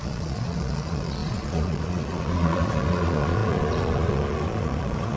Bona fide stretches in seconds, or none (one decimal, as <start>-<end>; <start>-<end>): none

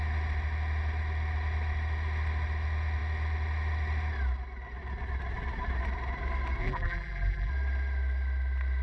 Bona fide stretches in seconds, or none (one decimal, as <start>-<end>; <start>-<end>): 0.0-6.6; 7.5-8.8

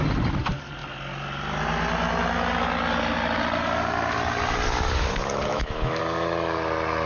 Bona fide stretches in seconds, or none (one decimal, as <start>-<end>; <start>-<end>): 0.0-5.5; 6.0-7.1

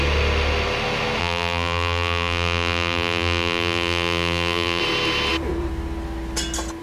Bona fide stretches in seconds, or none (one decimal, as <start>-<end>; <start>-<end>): 0.0-1.2; 4.8-6.8